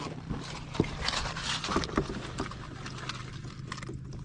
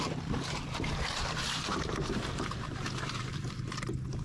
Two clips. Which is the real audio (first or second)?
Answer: first